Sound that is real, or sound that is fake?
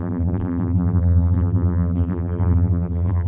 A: fake